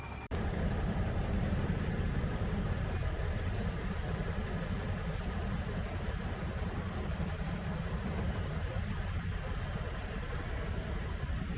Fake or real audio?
fake